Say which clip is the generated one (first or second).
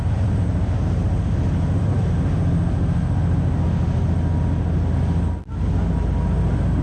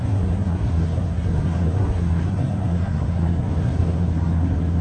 second